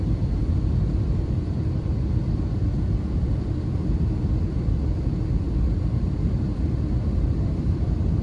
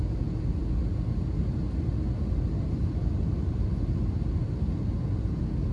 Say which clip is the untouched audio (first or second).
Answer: second